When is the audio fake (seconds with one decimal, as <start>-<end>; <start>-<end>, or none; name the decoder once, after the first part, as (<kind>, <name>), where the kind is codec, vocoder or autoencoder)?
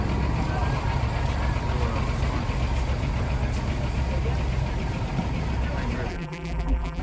6.1-7.0 (vocoder, BigVGAN v2)